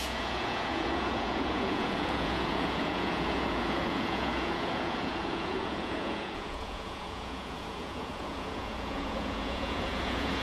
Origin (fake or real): fake